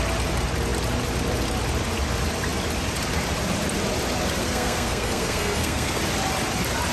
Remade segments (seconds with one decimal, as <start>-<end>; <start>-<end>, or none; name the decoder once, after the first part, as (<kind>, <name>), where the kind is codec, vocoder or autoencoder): 4.4-6.0 (codec, SNAC)